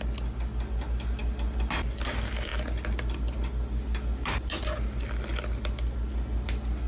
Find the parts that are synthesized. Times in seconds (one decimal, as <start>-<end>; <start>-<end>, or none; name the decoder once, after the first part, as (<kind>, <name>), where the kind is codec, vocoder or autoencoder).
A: none